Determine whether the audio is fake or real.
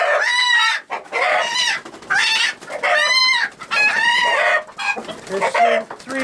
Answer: real